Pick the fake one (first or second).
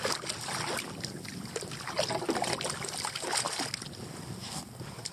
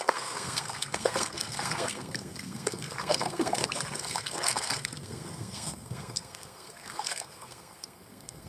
second